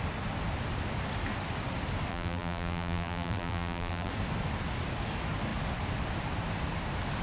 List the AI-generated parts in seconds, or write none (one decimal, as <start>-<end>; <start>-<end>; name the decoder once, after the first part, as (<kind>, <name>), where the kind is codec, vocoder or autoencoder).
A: 2.1-4.1 (vocoder, BigVGAN v2)